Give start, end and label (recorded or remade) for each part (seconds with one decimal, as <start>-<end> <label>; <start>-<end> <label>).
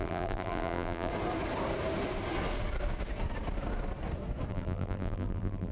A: 0.0-1.1 remade; 1.1-4.5 recorded; 4.5-5.7 remade